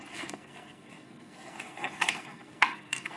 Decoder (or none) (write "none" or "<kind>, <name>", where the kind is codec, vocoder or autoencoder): codec, SNAC